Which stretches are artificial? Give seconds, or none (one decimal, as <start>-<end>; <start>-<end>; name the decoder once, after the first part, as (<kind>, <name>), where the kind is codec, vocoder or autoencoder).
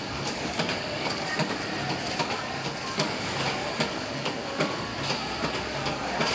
0.0-1.6 (codec, DAC); 2.2-4.9; 5.6-6.3